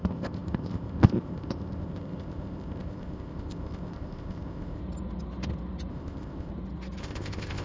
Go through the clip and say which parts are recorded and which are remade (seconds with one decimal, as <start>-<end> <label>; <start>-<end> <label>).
0.0-4.8 remade; 4.8-5.9 recorded; 5.9-6.5 remade; 6.5-7.0 recorded; 7.0-7.6 remade